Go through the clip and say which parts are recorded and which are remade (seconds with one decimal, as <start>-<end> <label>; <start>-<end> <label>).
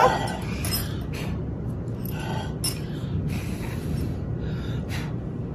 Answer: 0.0-5.5 recorded